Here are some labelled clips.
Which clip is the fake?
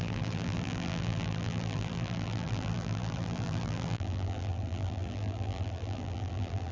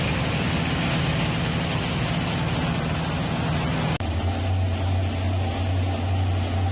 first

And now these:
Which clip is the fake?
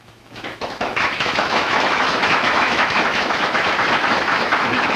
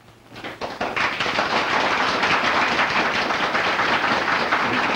first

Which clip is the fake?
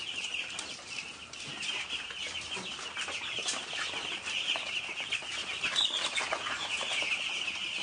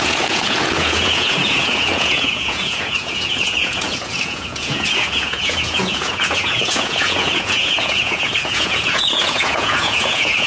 second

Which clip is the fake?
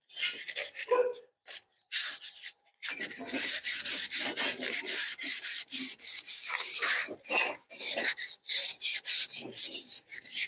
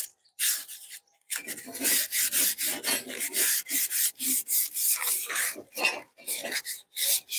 first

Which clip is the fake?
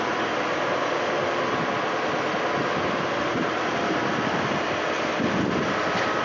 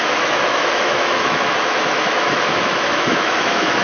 second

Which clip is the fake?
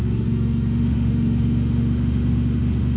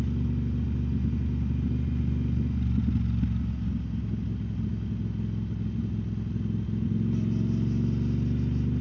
first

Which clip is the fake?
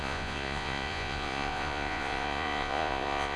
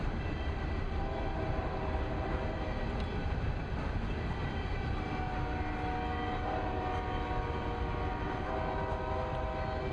first